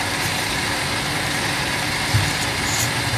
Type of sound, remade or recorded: remade